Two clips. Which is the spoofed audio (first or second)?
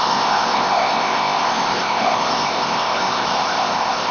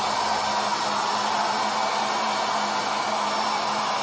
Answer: first